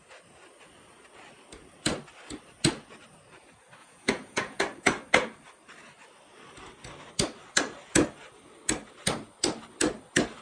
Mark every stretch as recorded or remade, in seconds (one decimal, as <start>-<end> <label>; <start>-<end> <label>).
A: 0.0-3.8 recorded; 3.8-4.6 remade; 4.6-10.4 recorded